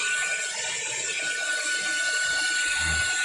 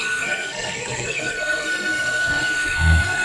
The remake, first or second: second